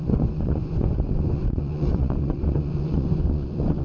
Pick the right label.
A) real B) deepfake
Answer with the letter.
B